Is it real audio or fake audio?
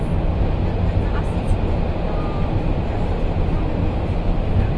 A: real